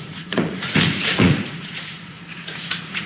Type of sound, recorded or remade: remade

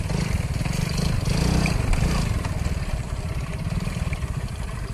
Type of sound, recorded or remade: recorded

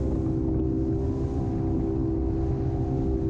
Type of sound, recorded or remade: recorded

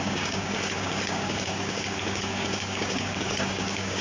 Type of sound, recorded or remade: remade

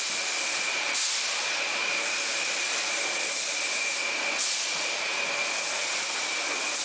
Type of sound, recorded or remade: recorded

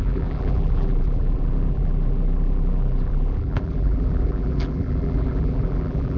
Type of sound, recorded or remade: remade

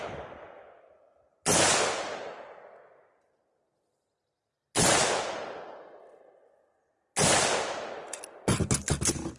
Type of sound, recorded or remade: recorded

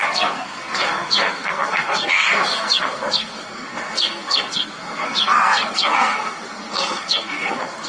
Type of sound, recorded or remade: remade